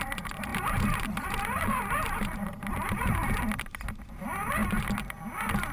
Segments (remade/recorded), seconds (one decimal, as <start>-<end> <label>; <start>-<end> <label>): 0.0-0.5 recorded; 0.5-3.3 remade; 3.3-4.6 recorded; 4.6-5.2 remade; 5.2-5.7 recorded